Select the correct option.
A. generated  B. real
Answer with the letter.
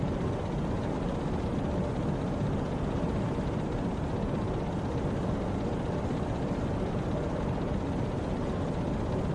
B